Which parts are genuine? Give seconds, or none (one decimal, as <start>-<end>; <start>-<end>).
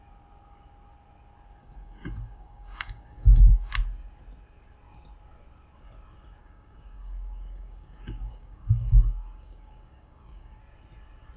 0.0-1.6; 3.7-6.4; 10.6-11.4